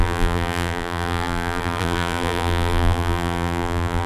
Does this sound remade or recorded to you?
remade